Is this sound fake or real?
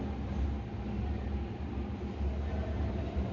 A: real